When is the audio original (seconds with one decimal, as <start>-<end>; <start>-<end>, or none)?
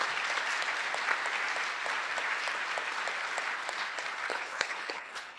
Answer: 0.0-4.3